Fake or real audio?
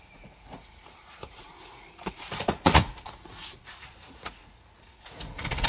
fake